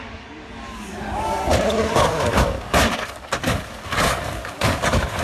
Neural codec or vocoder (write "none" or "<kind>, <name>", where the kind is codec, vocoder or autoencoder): codec, DAC